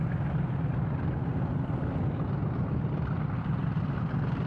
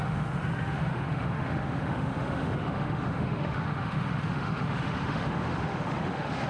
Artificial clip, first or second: second